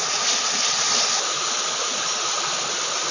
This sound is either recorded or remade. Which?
recorded